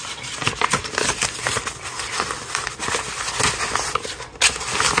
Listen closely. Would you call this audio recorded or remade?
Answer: recorded